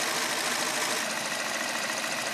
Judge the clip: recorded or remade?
recorded